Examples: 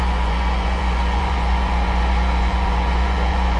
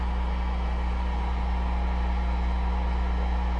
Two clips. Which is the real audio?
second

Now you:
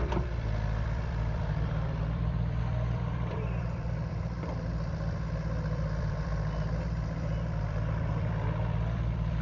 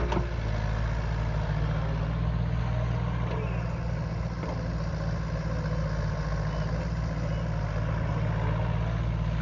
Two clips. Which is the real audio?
second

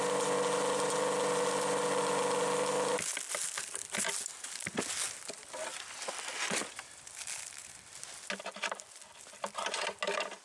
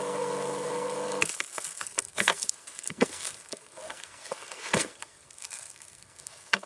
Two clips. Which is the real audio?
first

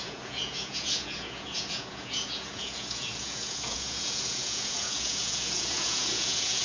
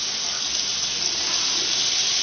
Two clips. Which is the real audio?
second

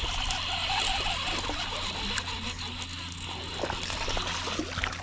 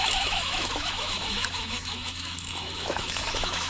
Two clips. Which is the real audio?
first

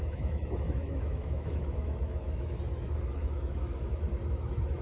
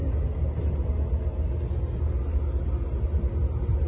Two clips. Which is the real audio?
second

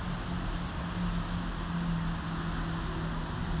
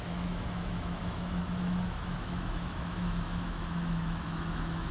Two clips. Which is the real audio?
first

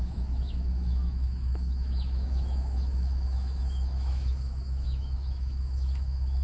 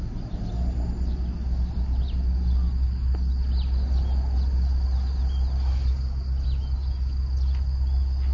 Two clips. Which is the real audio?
second